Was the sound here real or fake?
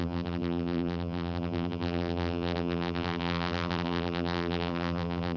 fake